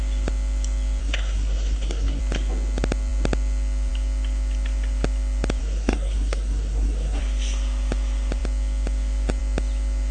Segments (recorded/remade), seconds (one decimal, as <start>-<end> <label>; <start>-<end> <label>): 0.0-1.0 recorded; 1.0-2.2 remade; 2.2-5.6 recorded; 5.6-7.2 remade; 7.2-10.1 recorded